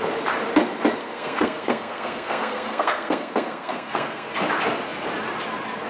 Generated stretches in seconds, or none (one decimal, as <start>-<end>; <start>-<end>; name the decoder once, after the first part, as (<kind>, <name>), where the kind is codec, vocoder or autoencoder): 1.0-4.3 (codec, SNAC)